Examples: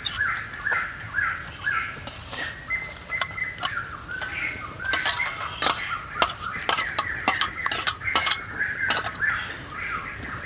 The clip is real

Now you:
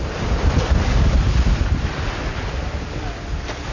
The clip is real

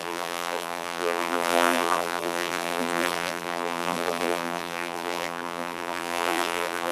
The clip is fake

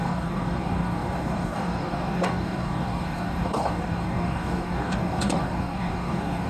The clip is fake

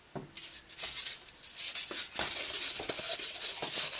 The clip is real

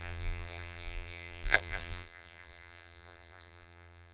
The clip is fake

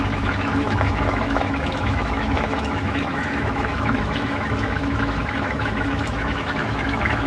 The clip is fake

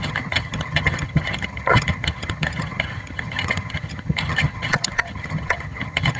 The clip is fake